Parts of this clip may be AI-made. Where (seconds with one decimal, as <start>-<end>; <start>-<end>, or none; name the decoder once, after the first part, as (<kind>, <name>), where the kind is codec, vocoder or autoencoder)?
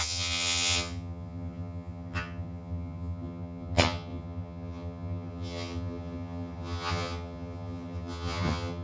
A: 0.0-8.8 (vocoder, HiFi-GAN)